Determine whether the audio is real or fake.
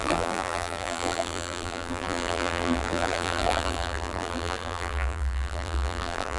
fake